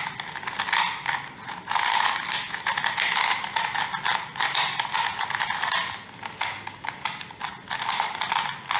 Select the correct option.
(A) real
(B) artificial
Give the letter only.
A